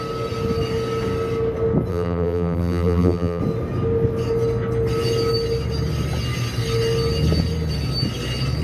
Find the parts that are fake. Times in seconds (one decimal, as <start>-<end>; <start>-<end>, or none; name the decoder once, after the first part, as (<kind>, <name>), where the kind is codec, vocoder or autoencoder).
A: 1.9-3.4 (vocoder, BigVGAN v2)